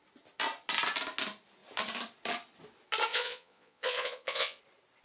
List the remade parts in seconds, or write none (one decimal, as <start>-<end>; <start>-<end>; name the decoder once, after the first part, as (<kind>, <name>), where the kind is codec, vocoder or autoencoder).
3.1-4.6 (vocoder, Vocos)